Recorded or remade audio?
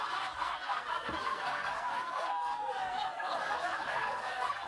remade